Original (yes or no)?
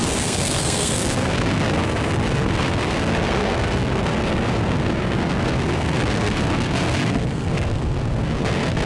no